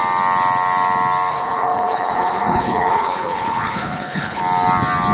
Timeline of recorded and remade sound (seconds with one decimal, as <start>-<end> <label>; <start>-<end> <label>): 0.0-1.3 recorded; 1.3-4.4 remade; 4.4-5.1 recorded

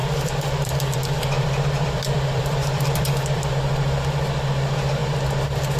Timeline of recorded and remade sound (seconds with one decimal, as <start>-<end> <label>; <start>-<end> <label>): 0.0-3.5 remade; 3.5-5.8 recorded

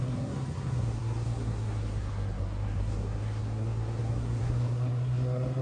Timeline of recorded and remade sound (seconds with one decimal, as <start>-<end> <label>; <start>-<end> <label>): 0.0-5.6 remade

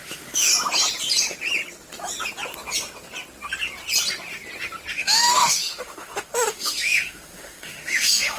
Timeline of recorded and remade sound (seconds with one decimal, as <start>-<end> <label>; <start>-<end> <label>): 0.0-0.5 remade; 0.5-4.9 recorded; 4.9-8.4 remade